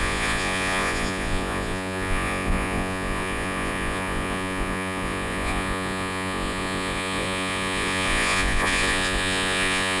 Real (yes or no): no